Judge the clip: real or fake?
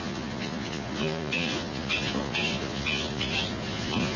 fake